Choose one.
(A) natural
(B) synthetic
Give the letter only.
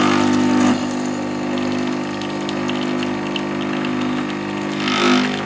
A